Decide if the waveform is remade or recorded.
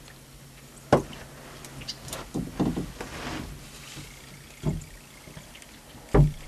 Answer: recorded